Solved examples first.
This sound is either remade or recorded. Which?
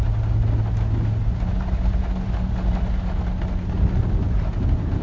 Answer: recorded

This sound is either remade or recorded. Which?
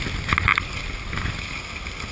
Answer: recorded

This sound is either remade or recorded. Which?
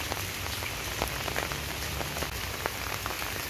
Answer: recorded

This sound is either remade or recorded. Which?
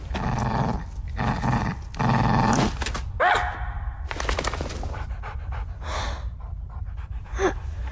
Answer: recorded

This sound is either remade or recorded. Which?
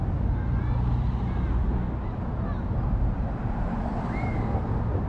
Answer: recorded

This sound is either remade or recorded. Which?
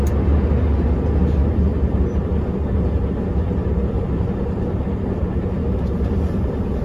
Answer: recorded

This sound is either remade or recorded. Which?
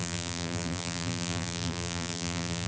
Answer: remade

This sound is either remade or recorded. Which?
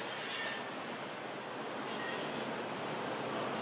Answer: recorded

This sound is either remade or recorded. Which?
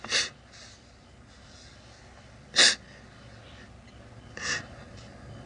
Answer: recorded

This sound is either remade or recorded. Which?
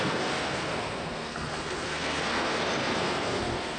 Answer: remade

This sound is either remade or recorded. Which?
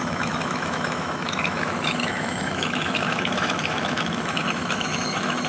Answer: remade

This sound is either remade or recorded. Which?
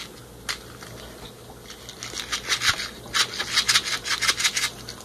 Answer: recorded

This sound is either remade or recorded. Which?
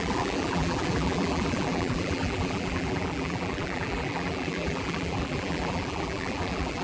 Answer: remade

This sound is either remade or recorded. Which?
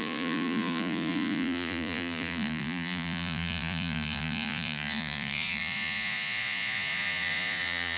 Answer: remade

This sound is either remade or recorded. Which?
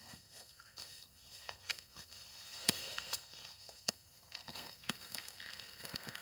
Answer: remade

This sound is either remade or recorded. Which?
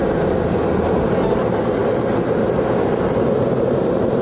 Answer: recorded